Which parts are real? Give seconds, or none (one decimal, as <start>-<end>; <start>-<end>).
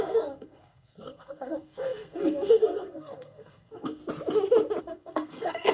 4.0-4.8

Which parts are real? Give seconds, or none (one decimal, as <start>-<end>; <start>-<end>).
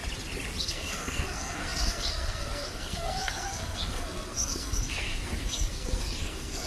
0.0-0.6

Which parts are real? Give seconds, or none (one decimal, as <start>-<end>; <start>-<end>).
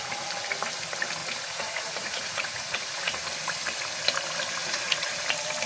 0.0-1.2; 3.2-4.6; 5.2-5.7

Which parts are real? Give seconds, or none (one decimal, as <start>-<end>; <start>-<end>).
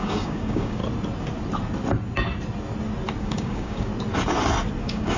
0.8-3.2; 3.9-4.8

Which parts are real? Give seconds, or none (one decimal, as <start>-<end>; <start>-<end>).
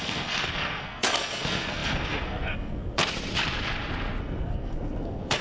3.0-4.2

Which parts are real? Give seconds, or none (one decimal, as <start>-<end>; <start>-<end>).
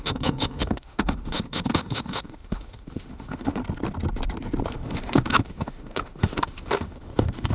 3.6-4.7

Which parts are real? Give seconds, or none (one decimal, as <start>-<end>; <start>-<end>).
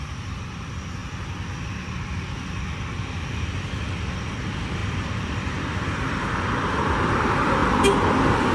1.0-2.4; 4.8-5.4; 7.6-8.1